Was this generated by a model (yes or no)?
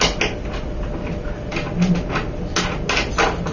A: no